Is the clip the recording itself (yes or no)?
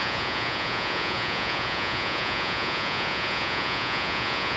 no